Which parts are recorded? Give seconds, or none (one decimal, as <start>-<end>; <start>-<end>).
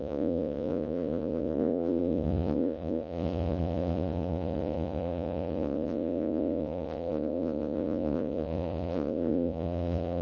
none